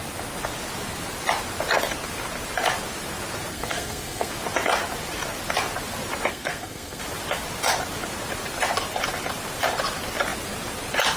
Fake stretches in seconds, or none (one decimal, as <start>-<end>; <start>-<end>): 3.5-4.3; 6.3-7.0